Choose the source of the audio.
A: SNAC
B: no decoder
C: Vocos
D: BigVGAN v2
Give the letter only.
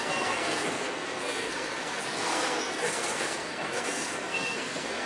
A